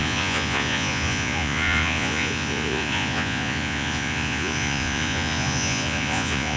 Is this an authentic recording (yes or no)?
no